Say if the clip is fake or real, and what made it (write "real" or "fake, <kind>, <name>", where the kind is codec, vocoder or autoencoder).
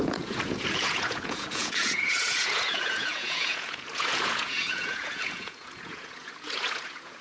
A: fake, vocoder, Vocos